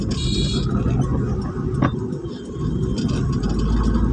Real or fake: real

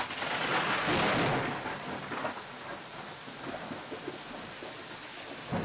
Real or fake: real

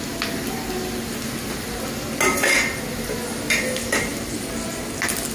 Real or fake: real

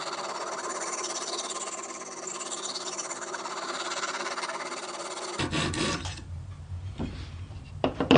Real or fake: fake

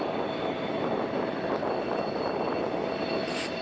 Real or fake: real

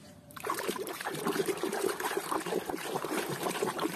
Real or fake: fake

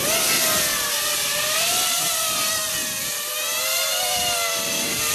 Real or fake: real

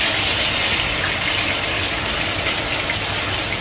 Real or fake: real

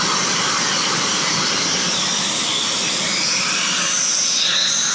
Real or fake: fake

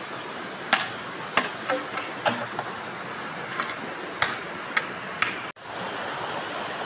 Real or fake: real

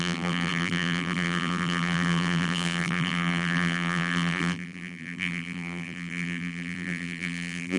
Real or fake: fake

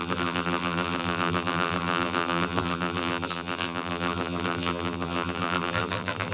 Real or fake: fake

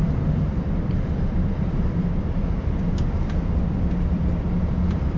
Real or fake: fake